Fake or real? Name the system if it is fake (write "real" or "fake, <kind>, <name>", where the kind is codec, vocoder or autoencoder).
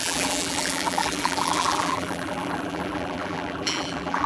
fake, vocoder, BigVGAN v2